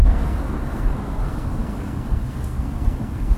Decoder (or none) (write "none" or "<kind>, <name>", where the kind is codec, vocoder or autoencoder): codec, SNAC